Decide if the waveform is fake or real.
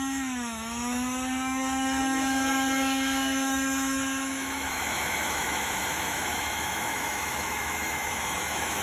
fake